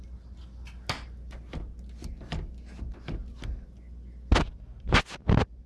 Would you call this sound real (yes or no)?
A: yes